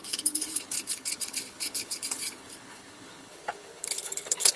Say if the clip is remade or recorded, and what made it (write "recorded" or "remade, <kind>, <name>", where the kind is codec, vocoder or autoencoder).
remade, codec, HILCodec